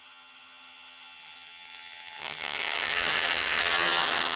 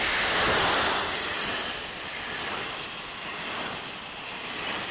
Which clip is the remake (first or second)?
first